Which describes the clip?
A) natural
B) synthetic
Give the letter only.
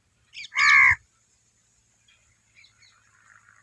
A